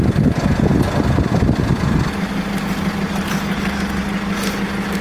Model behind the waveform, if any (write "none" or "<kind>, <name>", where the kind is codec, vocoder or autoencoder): none